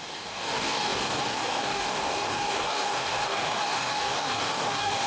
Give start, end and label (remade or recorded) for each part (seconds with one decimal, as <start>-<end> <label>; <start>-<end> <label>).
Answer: 0.0-5.1 remade